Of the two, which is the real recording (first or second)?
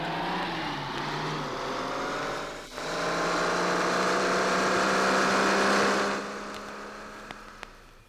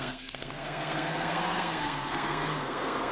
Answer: first